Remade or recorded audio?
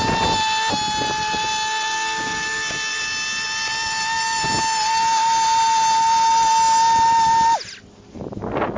recorded